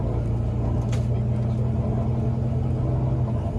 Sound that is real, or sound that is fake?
real